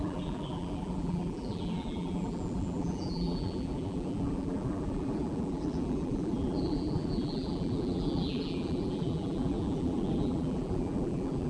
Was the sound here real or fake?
fake